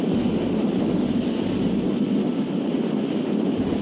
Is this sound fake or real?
real